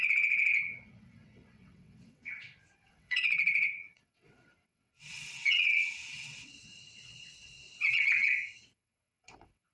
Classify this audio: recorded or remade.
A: remade